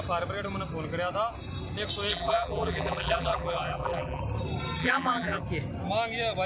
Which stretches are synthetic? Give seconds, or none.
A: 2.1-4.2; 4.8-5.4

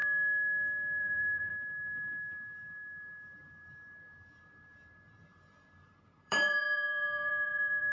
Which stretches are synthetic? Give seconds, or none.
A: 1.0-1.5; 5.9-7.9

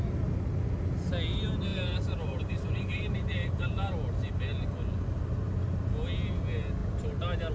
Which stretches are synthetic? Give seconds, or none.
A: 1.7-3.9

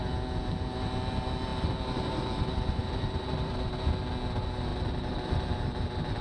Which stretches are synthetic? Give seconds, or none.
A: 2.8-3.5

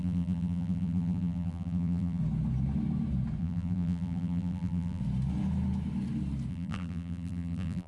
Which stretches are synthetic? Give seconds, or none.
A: 0.0-2.2; 3.4-5.0; 6.5-7.9

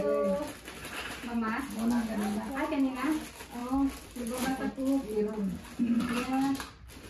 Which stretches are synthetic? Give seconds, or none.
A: 0.8-1.6